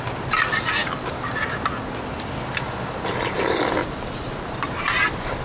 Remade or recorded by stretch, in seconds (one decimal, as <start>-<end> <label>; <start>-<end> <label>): 0.0-3.8 recorded; 3.8-4.3 remade; 4.3-5.4 recorded